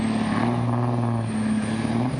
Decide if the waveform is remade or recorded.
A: recorded